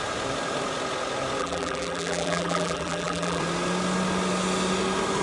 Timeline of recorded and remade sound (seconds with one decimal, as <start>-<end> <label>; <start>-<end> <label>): 0.0-1.4 recorded; 1.4-3.4 remade; 3.4-5.2 recorded